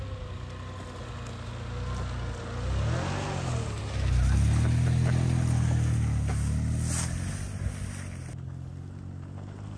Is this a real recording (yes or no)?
yes